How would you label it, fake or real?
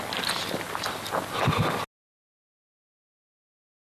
real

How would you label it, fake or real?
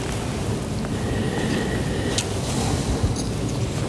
real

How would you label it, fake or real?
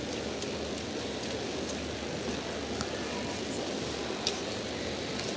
real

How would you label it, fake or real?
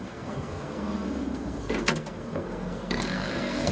fake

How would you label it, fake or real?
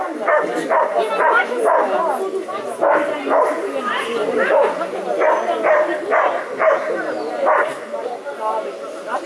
real